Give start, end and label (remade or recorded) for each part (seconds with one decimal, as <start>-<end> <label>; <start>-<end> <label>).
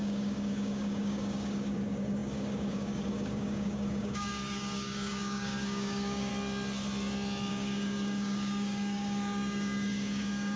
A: 0.0-6.3 remade; 6.3-7.5 recorded; 7.5-10.6 remade